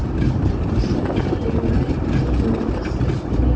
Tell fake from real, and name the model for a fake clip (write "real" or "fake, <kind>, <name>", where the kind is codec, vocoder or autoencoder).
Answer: real